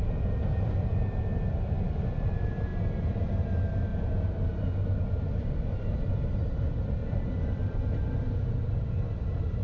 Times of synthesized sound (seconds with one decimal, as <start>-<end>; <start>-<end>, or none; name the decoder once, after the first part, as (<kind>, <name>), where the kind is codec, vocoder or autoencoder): 0.0-2.7 (vocoder, BigVGAN v2); 3.2-3.9; 5.4-9.6